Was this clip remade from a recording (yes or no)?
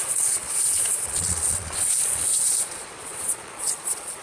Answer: yes